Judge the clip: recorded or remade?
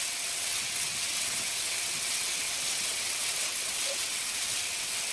remade